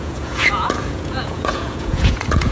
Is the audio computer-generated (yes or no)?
yes